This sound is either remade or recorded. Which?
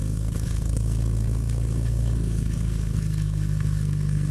remade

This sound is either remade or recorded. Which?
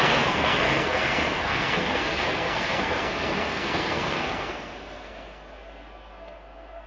remade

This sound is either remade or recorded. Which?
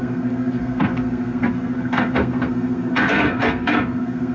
remade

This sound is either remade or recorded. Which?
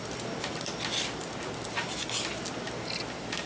recorded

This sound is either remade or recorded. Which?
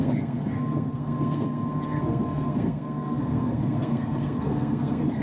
remade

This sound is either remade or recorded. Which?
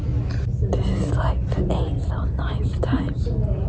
recorded